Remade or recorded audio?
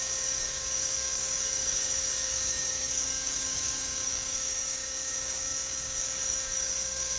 remade